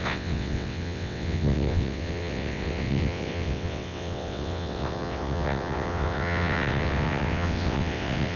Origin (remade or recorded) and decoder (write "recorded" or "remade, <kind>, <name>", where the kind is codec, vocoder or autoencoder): remade, vocoder, WaveNeXt